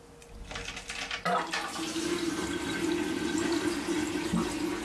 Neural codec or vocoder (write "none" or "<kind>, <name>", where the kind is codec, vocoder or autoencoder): none